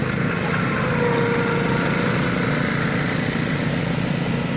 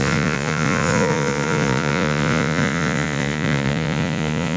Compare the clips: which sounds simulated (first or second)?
second